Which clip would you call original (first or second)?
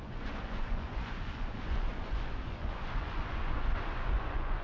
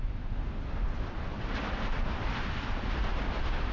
second